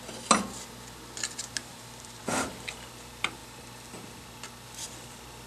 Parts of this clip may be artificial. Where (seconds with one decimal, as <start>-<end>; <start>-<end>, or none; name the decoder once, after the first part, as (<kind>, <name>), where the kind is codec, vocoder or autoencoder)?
1.7-2.2 (vocoder, BigVGAN v2)

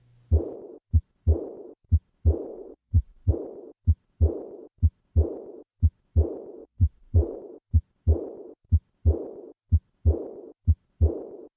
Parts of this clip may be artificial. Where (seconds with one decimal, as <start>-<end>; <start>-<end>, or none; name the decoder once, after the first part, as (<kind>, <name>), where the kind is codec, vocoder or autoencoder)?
2.5-3.3 (vocoder, Vocos); 6.6-7.4

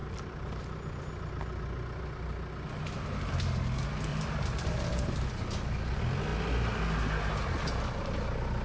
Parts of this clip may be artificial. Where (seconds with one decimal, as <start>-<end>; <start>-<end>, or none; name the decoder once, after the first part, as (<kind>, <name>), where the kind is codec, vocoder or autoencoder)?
4.1-4.9 (vocoder, BigVGAN v2)

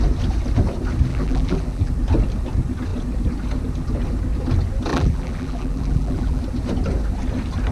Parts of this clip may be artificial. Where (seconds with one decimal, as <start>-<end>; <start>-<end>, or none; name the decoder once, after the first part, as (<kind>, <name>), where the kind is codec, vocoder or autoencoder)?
1.1-1.9 (vocoder, BigVGAN v2); 4.9-6.4

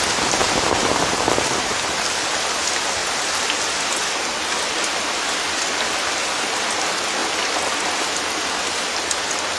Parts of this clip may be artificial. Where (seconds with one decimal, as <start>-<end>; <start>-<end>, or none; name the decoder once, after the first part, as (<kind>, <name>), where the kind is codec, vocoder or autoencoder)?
0.4-1.6 (vocoder, BigVGAN v2)

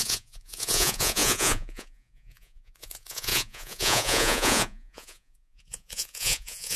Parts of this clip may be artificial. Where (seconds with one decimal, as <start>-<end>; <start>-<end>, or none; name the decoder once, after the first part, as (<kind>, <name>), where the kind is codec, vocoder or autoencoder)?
0.0-6.8 (vocoder, Vocos)